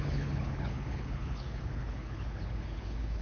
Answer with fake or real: fake